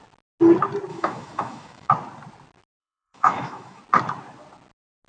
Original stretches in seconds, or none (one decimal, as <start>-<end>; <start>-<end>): 0.0-0.9; 1.9-2.8; 3.8-5.1